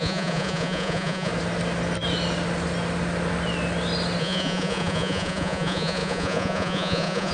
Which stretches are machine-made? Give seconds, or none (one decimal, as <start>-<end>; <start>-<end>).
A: 0.0-1.3; 4.2-7.3